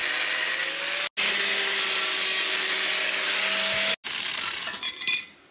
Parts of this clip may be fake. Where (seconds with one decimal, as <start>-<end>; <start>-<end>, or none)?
none